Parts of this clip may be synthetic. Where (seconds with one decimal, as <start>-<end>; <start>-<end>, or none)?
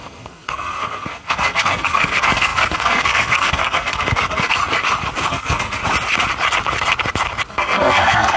0.0-4.6; 5.3-5.8; 7.5-8.4